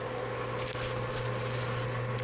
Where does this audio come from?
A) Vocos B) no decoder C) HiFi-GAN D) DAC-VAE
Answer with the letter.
B